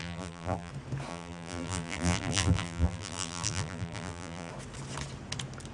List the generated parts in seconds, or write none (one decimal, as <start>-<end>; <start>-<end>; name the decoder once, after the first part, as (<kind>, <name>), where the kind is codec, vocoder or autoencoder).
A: 0.0-0.7 (vocoder, BigVGAN v2); 1.1-4.5